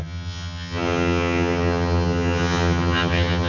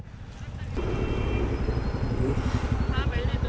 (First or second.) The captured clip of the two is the second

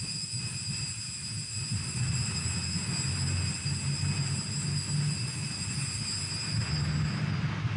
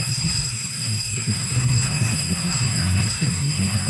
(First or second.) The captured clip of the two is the first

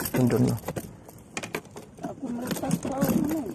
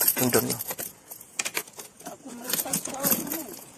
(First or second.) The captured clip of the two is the first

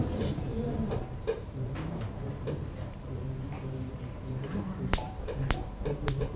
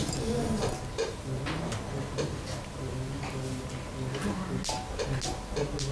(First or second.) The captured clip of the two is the second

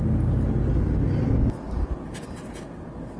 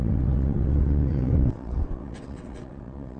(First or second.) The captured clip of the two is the first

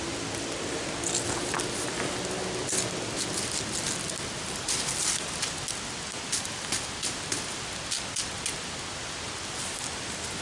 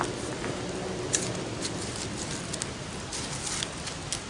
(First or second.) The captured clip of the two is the first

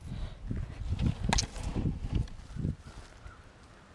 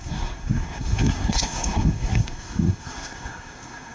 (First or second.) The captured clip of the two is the first